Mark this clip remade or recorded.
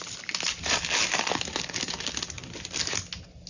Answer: recorded